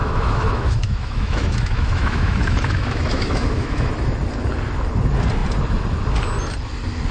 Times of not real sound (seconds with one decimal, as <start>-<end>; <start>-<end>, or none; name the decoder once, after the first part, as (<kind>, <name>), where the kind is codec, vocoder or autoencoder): 0.0-3.9 (autoencoder, DAC-VAE)